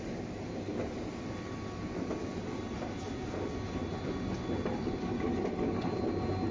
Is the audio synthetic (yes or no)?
no